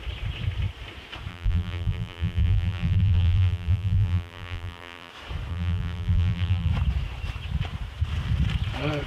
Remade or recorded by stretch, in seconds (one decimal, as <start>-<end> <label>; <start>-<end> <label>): 0.0-1.3 recorded; 1.3-5.1 remade; 5.1-5.5 recorded; 5.5-6.7 remade; 6.7-9.1 recorded